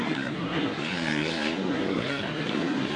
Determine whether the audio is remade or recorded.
remade